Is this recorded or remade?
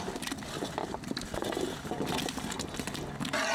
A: recorded